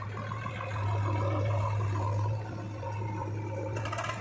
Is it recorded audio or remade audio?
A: recorded